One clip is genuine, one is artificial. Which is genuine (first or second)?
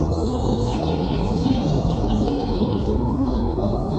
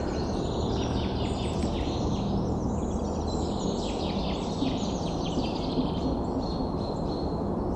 second